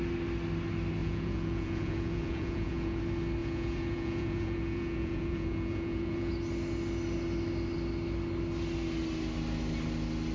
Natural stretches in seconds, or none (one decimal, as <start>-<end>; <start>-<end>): 0.0-1.0; 3.0-3.4; 6.3-10.3

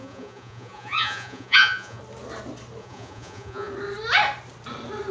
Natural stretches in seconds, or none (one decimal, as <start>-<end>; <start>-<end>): 2.0-2.8; 3.7-5.1

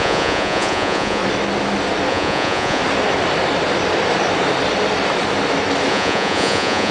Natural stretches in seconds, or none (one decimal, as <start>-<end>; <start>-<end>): 1.2-2.1; 2.8-5.9

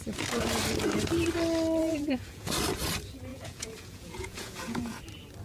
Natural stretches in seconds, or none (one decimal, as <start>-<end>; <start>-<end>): 0.0-1.8; 2.5-3.3; 5.0-5.4

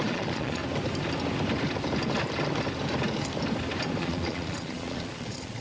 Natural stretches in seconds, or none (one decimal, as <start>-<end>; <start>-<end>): 0.6-4.0

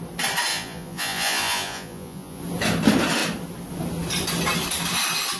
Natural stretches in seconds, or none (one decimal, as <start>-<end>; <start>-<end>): 0.0-0.5; 2.4-5.4